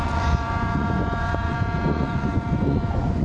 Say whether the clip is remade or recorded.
remade